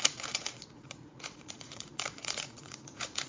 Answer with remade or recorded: remade